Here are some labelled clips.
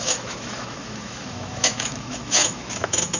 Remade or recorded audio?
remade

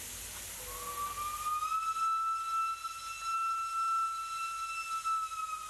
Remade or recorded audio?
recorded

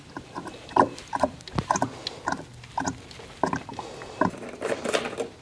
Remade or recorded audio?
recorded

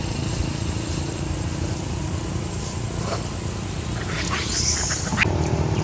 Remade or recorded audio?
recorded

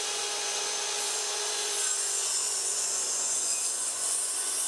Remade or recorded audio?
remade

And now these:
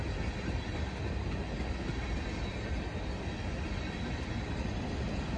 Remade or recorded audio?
recorded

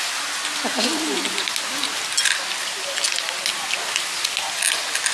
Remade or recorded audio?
recorded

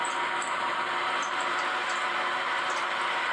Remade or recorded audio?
recorded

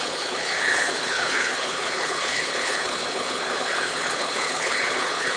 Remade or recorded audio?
remade